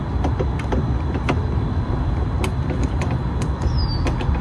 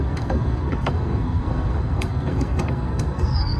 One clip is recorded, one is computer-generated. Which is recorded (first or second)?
first